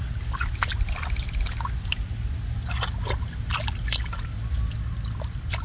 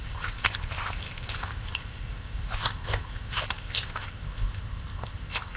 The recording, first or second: first